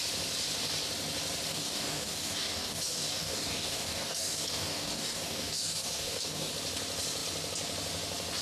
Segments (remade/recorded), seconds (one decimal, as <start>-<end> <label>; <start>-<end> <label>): 0.0-1.5 recorded; 1.5-6.5 remade; 6.5-8.4 recorded